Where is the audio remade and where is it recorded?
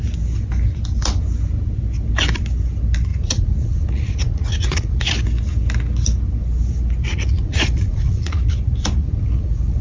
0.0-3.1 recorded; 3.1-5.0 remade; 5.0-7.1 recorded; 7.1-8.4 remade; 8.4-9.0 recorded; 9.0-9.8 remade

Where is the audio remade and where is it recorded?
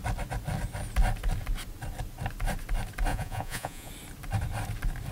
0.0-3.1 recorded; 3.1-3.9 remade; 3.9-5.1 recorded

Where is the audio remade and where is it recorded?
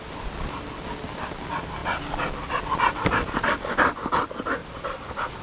0.0-5.4 recorded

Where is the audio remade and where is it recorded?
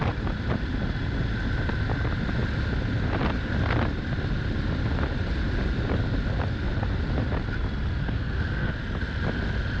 0.0-8.0 recorded; 8.0-8.7 remade; 8.7-9.8 recorded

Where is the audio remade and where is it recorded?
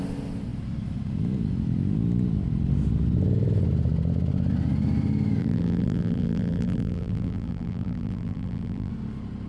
0.0-5.4 recorded; 5.4-8.9 remade; 8.9-9.5 recorded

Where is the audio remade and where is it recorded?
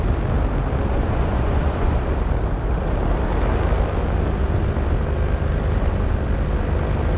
0.0-0.9 recorded; 0.9-2.0 remade; 2.0-7.2 recorded